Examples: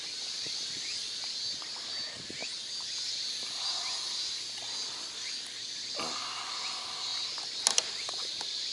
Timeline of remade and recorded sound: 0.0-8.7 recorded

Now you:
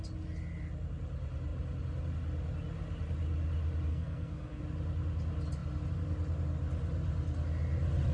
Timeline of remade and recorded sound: 0.0-3.9 recorded; 3.9-4.6 remade; 4.6-8.1 recorded

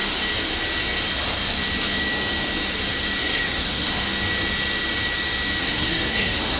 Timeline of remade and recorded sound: 0.0-3.2 recorded; 3.2-3.9 remade; 3.9-5.6 recorded; 5.6-6.6 remade

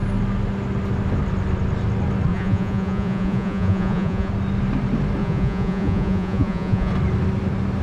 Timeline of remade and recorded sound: 0.0-2.3 recorded; 2.3-4.3 remade; 4.3-5.2 recorded; 5.2-6.9 remade; 6.9-7.8 recorded

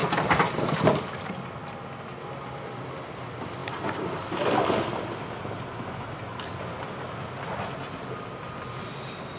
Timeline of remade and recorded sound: 0.0-9.4 recorded